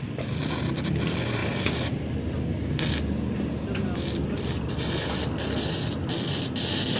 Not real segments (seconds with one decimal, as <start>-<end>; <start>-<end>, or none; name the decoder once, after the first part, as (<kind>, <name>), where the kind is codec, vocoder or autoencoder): none